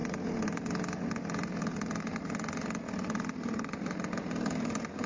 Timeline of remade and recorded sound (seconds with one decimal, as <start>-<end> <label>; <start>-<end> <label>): 0.0-5.1 recorded